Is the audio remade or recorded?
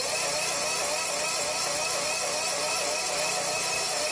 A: recorded